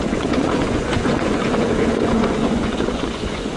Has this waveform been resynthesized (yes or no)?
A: yes